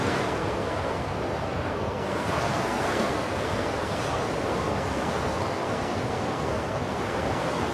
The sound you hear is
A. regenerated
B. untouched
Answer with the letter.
A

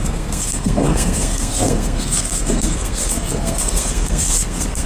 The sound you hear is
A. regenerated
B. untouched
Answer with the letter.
A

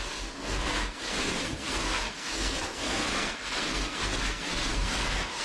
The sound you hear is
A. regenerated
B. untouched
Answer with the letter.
A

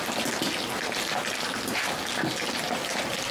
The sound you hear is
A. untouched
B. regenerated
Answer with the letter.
A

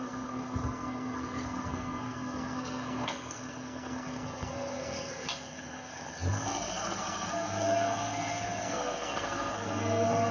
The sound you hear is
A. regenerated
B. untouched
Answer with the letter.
A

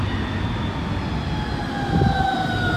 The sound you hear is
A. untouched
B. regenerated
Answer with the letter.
A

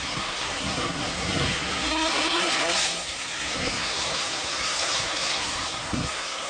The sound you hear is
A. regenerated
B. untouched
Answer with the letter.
A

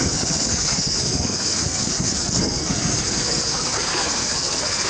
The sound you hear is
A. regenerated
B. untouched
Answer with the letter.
A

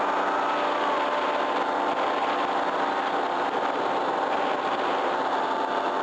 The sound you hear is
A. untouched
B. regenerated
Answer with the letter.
A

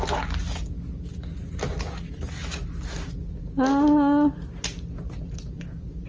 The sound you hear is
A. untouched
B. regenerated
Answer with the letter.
A